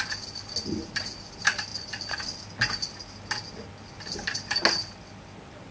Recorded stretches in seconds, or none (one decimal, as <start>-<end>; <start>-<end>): 0.0-5.7